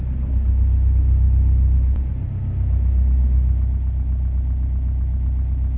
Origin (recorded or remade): recorded